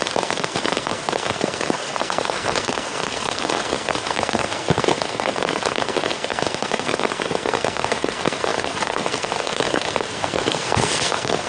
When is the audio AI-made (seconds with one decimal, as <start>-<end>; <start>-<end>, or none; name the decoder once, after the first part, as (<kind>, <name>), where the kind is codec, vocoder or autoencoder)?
0.0-11.5 (codec, SNAC)